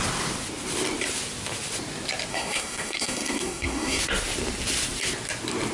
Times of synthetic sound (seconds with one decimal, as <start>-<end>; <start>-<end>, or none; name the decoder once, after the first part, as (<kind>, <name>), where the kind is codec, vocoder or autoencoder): 2.3-4.0 (codec, SNAC)